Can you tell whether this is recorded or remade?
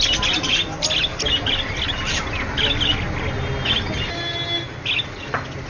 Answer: recorded